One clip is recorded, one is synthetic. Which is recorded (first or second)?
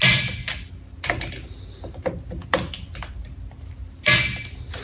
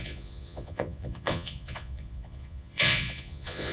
first